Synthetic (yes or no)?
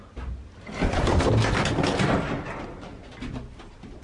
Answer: no